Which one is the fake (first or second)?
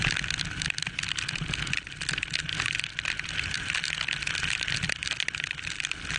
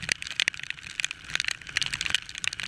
second